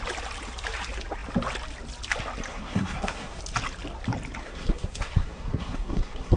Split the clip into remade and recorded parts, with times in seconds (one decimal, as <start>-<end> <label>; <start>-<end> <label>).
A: 0.0-2.5 recorded; 2.5-3.4 remade; 3.4-4.4 recorded; 4.4-6.4 remade